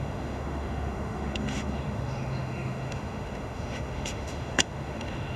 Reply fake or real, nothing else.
fake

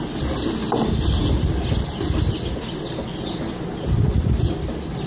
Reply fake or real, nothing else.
real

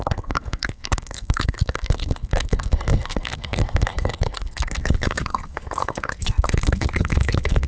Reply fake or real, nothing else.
fake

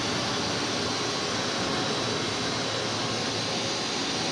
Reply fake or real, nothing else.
real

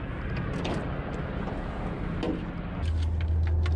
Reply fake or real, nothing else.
real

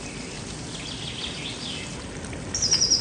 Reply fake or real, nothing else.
real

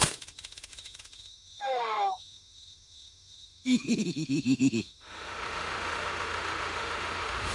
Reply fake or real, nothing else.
fake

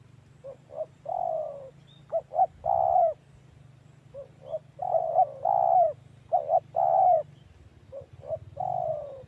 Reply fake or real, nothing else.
real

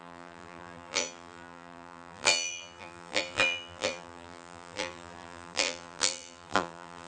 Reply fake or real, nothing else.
fake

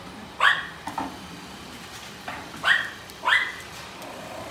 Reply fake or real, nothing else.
fake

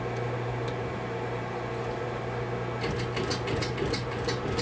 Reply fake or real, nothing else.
real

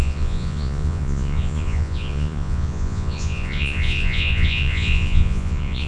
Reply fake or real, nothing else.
fake